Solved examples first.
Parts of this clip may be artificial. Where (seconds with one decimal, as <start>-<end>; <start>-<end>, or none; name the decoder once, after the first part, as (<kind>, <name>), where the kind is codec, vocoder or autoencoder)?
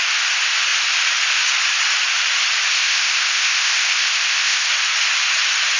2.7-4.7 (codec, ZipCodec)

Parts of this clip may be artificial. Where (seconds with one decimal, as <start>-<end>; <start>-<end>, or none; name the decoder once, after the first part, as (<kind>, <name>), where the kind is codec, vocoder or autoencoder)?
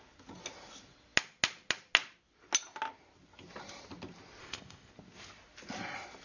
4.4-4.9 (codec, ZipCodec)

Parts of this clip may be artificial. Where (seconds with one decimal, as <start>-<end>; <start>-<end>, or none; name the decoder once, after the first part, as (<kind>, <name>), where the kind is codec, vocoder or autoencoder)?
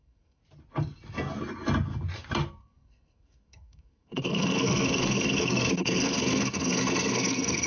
0.0-0.4 (codec, SNAC); 2.6-7.7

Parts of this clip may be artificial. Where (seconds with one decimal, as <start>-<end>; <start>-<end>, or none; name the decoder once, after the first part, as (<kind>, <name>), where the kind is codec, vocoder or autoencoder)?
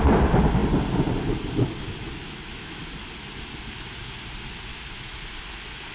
2.2-2.8 (autoencoder, DAC-VAE); 4.7-5.2